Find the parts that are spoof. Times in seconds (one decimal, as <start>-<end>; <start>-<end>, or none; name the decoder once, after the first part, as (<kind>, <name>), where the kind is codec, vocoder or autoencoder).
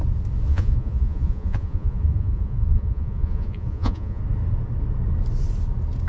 0.5-4.2 (vocoder, Vocos)